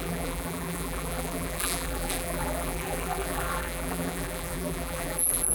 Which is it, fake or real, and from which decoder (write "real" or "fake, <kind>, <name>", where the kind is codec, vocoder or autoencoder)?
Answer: fake, vocoder, BigVGAN v2